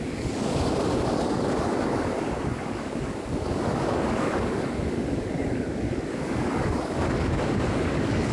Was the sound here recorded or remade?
remade